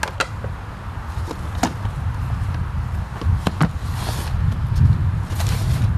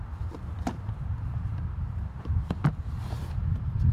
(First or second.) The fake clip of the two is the second